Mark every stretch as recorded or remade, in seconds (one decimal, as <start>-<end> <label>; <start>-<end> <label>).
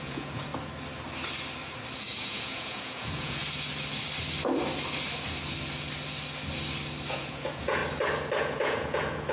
0.0-0.5 remade; 0.5-2.2 recorded; 2.2-3.4 remade; 3.4-7.1 recorded; 7.1-7.8 remade; 7.8-8.4 recorded; 8.4-9.3 remade